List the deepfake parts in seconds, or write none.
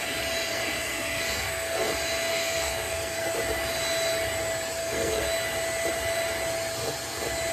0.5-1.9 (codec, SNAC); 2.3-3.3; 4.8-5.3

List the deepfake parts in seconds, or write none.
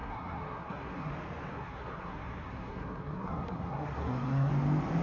0.0-1.1 (codec, SNAC); 1.5-4.5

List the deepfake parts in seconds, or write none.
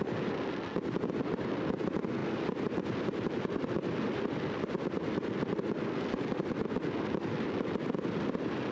none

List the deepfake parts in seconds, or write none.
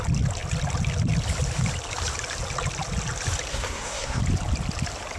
3.5-4.2 (codec, SNAC)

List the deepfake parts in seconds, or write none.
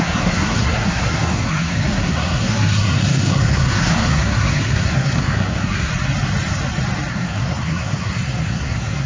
0.0-5.9 (codec, SNAC); 7.1-9.1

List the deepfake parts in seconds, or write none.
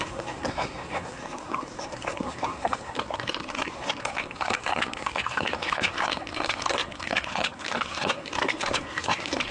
0.0-9.5 (codec, SNAC)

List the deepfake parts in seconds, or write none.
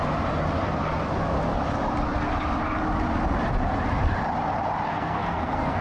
4.9-5.8 (codec, SNAC)